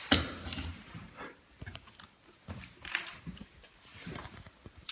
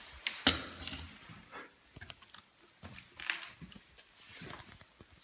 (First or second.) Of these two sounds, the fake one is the first